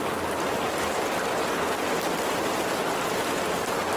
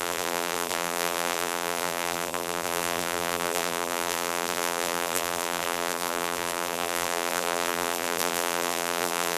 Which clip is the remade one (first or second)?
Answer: second